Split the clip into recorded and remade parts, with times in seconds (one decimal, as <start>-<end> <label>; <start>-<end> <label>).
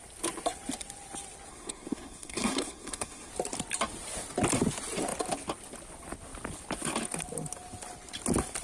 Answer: 0.0-1.5 recorded; 1.5-3.3 remade; 3.3-8.6 recorded